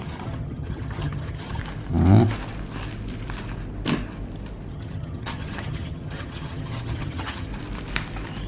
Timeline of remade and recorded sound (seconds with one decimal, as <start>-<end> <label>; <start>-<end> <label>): 0.0-1.6 remade; 1.6-4.7 recorded; 4.7-7.5 remade; 7.5-8.5 recorded